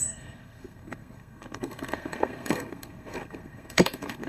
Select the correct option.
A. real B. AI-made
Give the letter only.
B